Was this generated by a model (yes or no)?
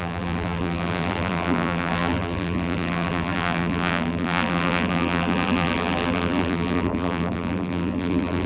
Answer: yes